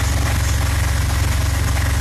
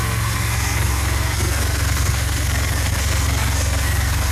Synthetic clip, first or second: second